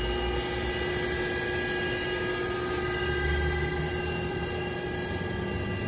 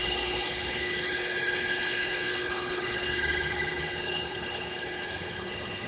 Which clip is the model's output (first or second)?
second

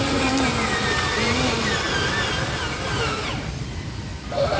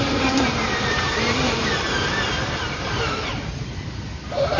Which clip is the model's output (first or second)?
second